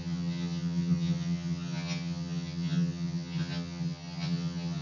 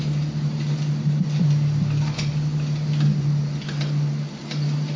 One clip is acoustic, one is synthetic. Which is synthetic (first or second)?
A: first